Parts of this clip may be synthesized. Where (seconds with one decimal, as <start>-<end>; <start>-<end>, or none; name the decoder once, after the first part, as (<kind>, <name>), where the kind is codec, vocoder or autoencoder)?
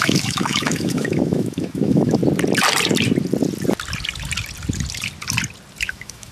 0.0-2.2 (autoencoder, DAC-VAE); 5.8-6.3